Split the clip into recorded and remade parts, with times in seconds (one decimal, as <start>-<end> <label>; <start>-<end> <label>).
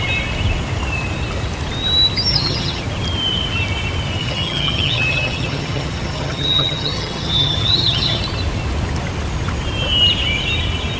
0.0-2.3 recorded; 2.3-2.8 remade; 2.8-4.2 recorded; 4.2-8.2 remade; 8.2-11.0 recorded